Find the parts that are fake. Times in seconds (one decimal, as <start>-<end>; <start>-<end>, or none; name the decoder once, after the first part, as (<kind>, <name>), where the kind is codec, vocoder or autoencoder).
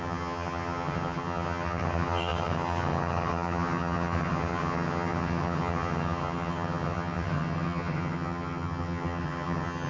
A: 0.0-9.9 (vocoder, HiFi-GAN)